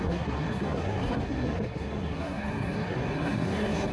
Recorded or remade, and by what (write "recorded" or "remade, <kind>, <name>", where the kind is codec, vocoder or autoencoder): remade, codec, SNAC